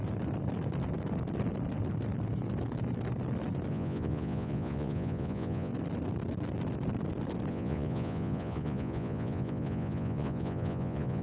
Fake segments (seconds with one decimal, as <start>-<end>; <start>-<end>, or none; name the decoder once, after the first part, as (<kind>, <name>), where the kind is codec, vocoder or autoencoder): 3.7-5.7 (vocoder, Vocos); 7.5-11.2